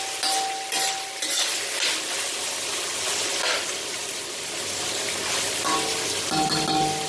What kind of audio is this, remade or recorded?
recorded